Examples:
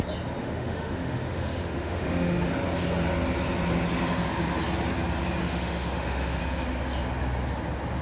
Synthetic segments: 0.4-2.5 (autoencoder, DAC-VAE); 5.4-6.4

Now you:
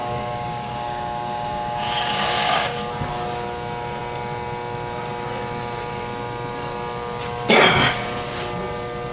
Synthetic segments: 0.0-2.9 (codec, DAC)

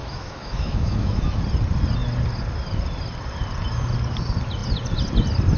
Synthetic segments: 0.0-1.4 (autoencoder, DAC-VAE)

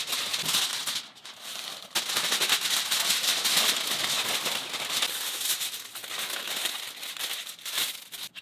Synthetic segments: none

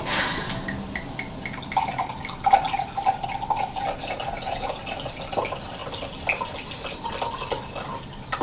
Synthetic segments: none

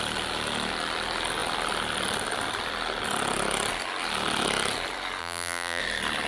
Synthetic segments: 5.2-5.8 (vocoder, BigVGAN v2)

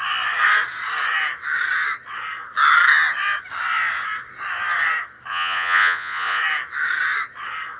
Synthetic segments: 5.3-6.4 (vocoder, Vocos)